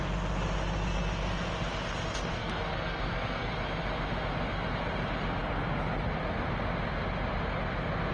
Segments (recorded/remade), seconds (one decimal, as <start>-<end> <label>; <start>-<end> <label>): 0.0-2.3 recorded; 2.3-3.5 remade; 3.5-8.1 recorded